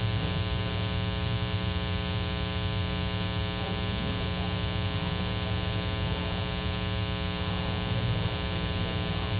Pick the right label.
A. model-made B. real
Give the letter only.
B